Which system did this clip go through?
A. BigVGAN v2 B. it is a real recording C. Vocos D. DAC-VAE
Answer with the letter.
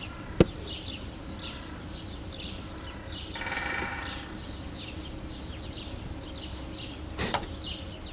B